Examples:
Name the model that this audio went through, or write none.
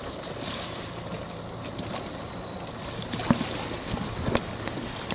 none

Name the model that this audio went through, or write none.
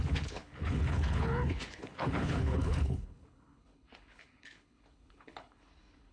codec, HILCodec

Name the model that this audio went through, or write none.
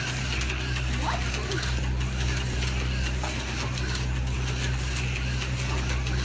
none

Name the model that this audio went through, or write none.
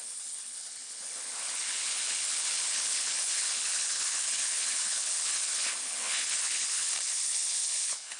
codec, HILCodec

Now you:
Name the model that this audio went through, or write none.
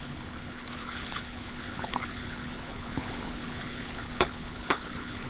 codec, HILCodec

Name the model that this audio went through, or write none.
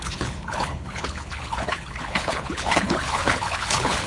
codec, HILCodec